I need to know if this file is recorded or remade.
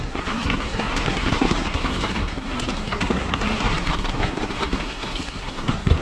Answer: remade